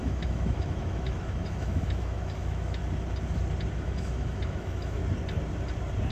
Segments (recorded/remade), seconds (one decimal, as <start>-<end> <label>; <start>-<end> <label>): 0.0-2.8 remade; 2.8-3.7 recorded; 3.7-5.0 remade; 5.0-6.1 recorded